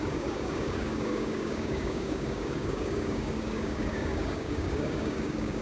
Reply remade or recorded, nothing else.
remade